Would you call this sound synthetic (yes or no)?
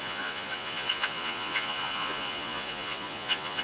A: yes